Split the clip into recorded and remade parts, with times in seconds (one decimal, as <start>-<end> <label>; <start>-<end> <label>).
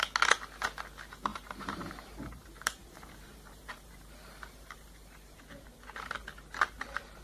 0.0-1.3 recorded; 1.3-5.4 remade; 5.4-7.2 recorded